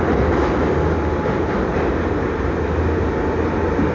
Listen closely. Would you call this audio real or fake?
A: real